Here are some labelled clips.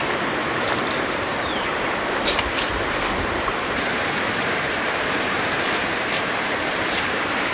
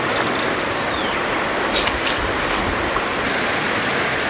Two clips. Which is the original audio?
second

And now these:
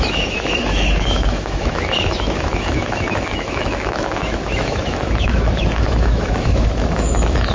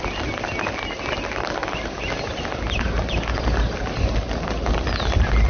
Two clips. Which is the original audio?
second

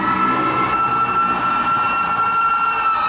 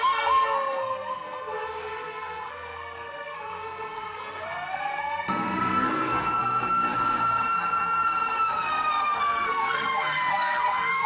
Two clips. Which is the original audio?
first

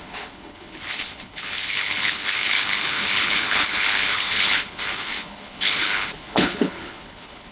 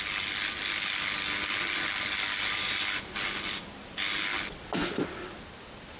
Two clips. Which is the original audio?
second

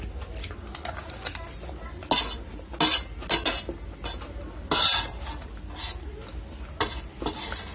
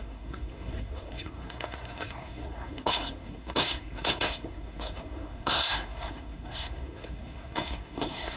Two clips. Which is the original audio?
first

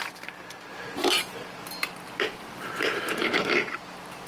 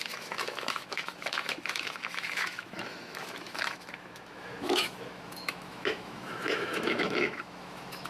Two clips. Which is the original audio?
first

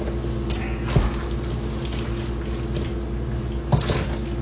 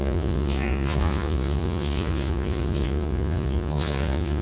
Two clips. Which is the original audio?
first